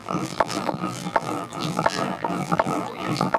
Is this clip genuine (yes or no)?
no